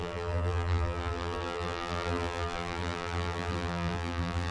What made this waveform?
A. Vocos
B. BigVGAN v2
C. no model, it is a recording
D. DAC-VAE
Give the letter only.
B